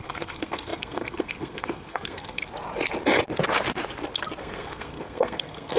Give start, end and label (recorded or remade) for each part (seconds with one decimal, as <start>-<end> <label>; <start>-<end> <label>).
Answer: 0.0-2.4 remade; 2.4-4.4 recorded; 4.4-5.8 remade